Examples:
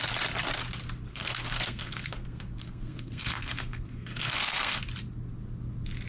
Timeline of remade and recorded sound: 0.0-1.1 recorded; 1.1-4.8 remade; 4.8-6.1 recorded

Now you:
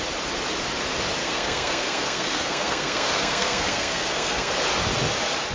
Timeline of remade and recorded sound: 0.0-1.2 recorded; 1.2-4.5 remade; 4.5-5.5 recorded